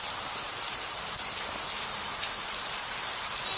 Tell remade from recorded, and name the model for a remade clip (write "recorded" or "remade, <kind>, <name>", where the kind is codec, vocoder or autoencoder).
recorded